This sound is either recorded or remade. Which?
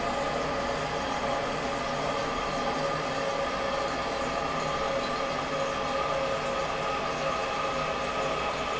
recorded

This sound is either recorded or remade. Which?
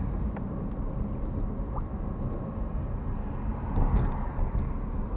recorded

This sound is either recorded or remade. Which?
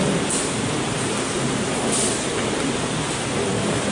recorded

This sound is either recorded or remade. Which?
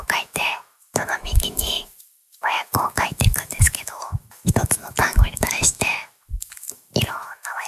remade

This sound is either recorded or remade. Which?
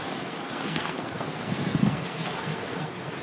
remade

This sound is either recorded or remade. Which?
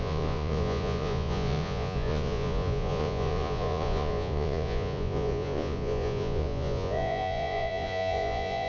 remade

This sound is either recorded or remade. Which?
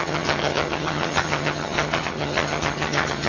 remade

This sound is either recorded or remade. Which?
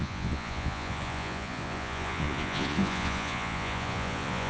remade